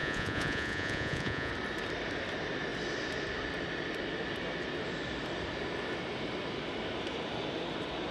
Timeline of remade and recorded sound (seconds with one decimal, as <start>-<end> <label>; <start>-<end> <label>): 0.0-1.5 remade; 1.5-8.1 recorded